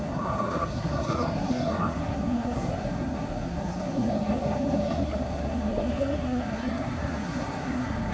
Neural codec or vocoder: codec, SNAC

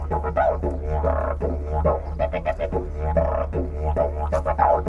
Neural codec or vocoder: none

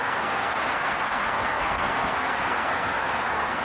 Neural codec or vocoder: codec, SNAC